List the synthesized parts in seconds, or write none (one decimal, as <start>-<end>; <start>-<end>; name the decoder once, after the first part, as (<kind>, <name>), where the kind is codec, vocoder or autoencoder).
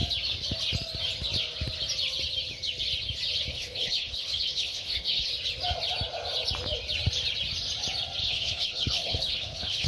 3.5-5.3 (codec, HILCodec); 8.2-9.9